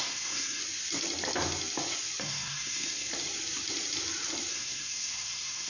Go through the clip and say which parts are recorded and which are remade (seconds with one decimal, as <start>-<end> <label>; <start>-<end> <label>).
0.0-0.6 remade; 0.6-2.2 recorded; 2.2-3.1 remade; 3.1-4.5 recorded; 4.5-5.7 remade